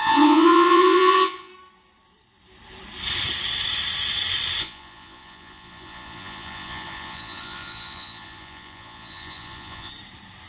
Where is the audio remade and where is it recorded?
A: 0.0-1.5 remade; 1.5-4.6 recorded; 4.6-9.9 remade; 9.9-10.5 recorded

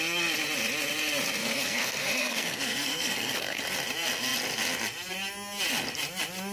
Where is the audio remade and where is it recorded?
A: 0.0-1.4 recorded; 1.4-3.6 remade; 3.6-6.5 recorded